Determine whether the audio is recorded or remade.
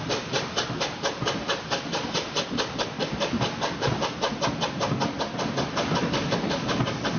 recorded